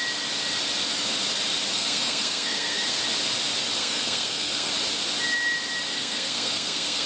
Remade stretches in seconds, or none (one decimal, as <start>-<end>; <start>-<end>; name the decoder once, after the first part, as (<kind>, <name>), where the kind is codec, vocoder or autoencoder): 1.7-3.0 (codec, SNAC); 3.8-4.7; 5.9-7.1